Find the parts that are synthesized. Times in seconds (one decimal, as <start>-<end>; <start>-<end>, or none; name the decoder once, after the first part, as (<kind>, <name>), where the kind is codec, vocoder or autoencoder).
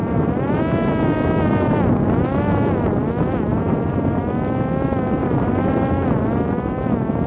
0.0-0.6 (vocoder, BigVGAN v2); 3.5-4.2; 5.2-6.2